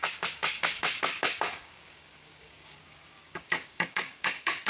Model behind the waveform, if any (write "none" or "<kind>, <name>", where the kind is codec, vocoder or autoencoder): codec, DAC